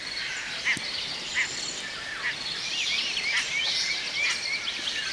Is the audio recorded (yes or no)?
yes